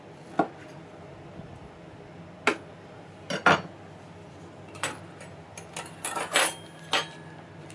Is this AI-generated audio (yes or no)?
no